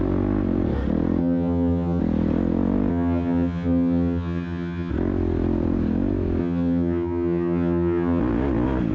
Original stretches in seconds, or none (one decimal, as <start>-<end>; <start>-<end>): 0.0-1.2; 2.0-2.9; 4.9-6.4; 8.2-8.9